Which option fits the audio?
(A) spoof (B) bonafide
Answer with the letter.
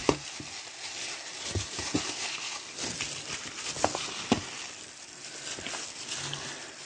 B